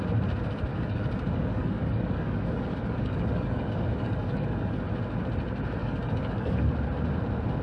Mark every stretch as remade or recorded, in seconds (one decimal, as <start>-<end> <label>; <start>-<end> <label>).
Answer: 0.0-0.7 recorded; 0.7-4.8 remade; 4.8-5.8 recorded; 5.8-6.7 remade; 6.7-7.6 recorded